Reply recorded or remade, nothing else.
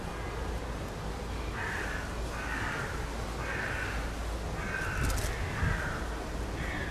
recorded